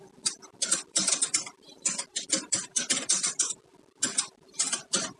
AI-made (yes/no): yes